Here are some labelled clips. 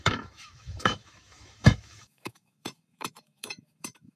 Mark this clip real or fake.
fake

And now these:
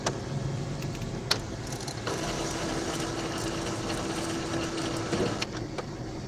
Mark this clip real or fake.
real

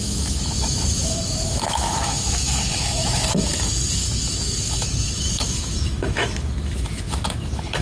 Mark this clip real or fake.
fake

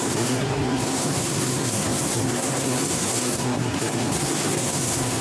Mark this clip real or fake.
fake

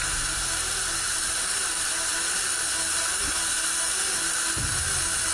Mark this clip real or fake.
real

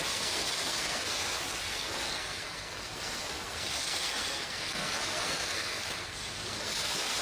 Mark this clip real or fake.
fake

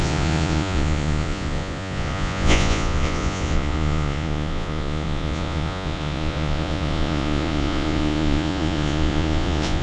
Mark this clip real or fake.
fake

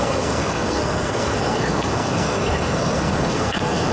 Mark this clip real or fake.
fake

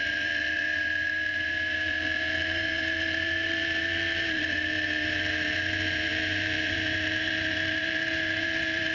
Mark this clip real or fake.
fake